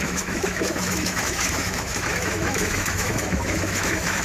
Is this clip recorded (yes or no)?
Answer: no